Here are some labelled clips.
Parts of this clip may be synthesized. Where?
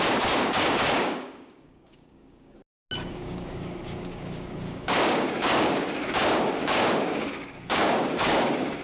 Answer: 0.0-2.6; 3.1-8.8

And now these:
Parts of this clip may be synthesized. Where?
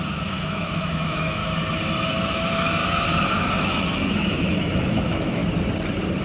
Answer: 0.0-1.4; 2.1-2.8; 3.6-5.4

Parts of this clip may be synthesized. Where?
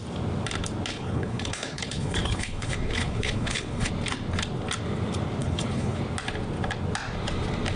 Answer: 0.9-3.9; 5.4-6.0